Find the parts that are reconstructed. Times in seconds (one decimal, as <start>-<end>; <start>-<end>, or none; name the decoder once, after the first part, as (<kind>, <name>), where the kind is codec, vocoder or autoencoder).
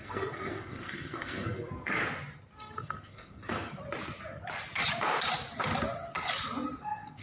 0.0-2.0 (codec, SNAC); 2.6-3.8; 6.8-7.2